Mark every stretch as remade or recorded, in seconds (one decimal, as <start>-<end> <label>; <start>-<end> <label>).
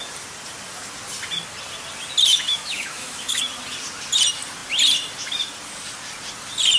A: 0.0-2.3 recorded; 2.3-3.4 remade; 3.4-6.8 recorded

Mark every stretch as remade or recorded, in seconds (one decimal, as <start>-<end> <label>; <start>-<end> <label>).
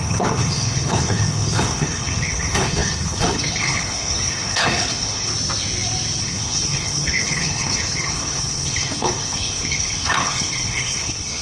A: 0.0-5.3 remade; 5.3-6.2 recorded; 6.2-11.4 remade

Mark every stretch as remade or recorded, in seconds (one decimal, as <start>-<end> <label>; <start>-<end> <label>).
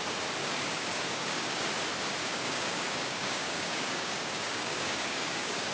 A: 0.0-0.4 recorded; 0.4-1.6 remade; 1.6-2.2 recorded; 2.2-5.7 remade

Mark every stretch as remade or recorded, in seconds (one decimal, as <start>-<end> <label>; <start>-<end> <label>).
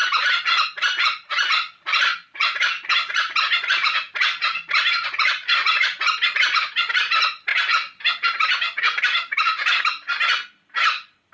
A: 0.0-11.3 recorded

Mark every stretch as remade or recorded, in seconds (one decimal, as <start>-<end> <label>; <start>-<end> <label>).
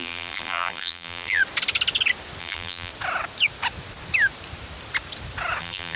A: 0.0-1.4 remade; 1.4-2.4 recorded; 2.4-2.9 remade; 2.9-5.6 recorded; 5.6-6.0 remade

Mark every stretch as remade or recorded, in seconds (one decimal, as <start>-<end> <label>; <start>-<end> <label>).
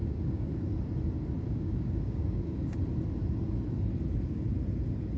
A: 0.0-0.5 remade; 0.5-1.4 recorded; 1.4-2.8 remade; 2.8-5.2 recorded